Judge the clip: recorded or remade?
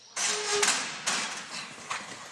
recorded